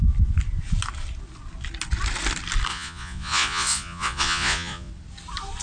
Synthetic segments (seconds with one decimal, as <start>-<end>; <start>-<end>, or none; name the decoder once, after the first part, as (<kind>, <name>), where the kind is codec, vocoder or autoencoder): 2.7-4.9 (vocoder, Vocos)